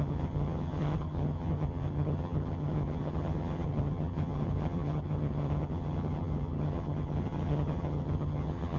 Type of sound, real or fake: fake